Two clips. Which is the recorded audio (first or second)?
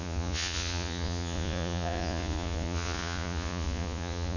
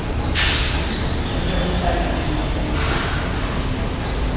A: second